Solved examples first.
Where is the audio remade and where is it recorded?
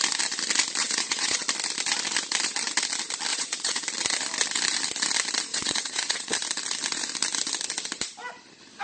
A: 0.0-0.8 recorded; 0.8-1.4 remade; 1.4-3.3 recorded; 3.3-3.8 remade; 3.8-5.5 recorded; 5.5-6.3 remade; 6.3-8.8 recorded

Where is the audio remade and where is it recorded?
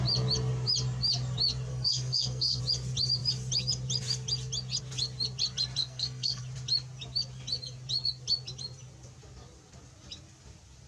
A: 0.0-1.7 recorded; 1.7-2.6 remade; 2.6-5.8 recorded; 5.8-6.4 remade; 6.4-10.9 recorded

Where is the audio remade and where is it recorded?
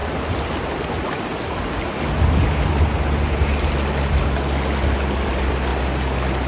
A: 0.0-6.5 recorded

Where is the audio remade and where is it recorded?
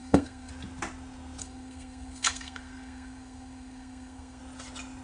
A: 0.0-0.5 remade; 0.5-1.4 recorded; 1.4-4.4 remade; 4.4-5.0 recorded